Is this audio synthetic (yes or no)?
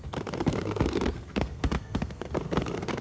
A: yes